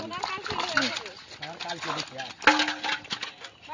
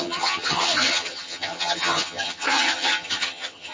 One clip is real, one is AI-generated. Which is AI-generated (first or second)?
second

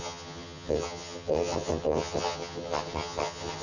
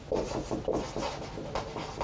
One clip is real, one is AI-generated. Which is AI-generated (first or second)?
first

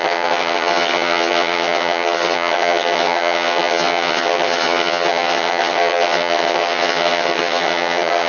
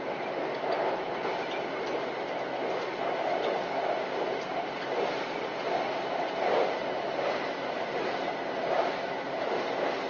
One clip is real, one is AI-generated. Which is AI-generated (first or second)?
first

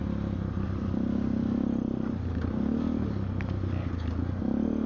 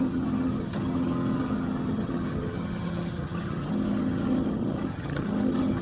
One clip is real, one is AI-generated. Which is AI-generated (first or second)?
second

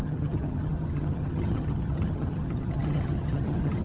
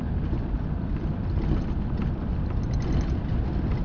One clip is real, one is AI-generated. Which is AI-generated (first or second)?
first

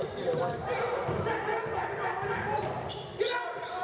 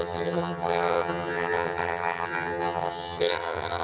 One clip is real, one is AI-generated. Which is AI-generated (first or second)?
second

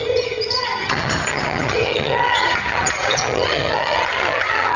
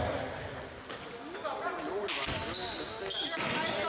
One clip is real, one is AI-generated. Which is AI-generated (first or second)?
first